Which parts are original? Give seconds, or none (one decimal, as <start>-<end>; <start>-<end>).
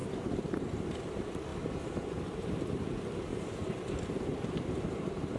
0.0-0.5; 1.5-2.1